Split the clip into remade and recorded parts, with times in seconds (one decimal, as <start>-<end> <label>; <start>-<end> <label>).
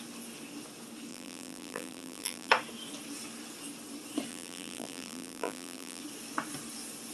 0.0-1.1 recorded; 1.1-2.5 remade; 2.5-4.3 recorded; 4.3-6.0 remade; 6.0-7.1 recorded